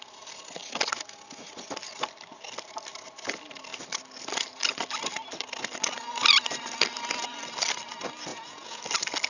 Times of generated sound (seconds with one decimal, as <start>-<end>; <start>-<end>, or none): 8.3-8.8